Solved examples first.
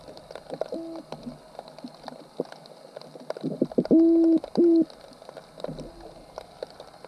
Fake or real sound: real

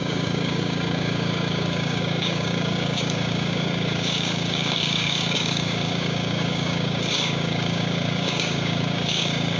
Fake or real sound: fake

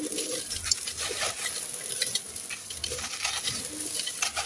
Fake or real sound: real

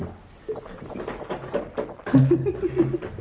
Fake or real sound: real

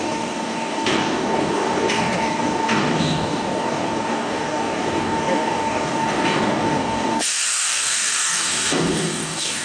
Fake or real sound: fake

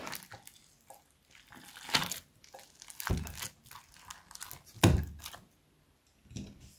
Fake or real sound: real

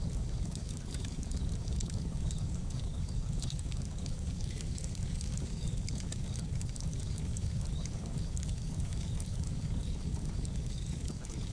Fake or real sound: fake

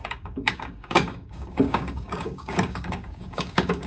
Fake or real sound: fake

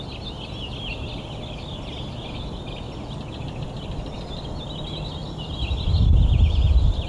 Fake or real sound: real